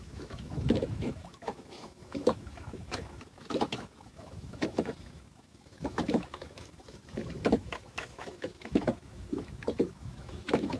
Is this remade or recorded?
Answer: remade